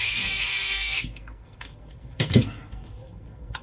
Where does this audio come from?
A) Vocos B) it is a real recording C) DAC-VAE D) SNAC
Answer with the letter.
D